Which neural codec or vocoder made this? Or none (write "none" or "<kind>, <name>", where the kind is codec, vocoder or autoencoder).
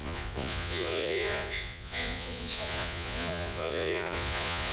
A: vocoder, Vocos